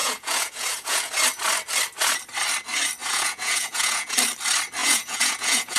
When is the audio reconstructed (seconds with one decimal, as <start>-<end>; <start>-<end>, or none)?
0.0-1.1; 3.0-4.1; 4.8-5.8